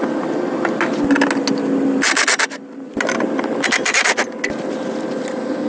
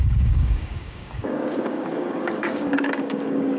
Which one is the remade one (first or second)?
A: second